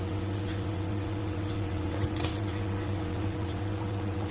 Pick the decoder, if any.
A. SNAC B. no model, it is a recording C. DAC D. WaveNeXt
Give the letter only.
D